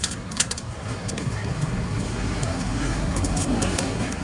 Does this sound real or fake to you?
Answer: fake